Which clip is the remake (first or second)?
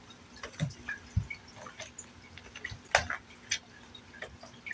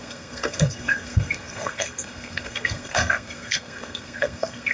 second